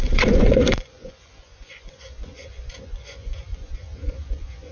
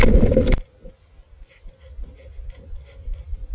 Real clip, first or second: second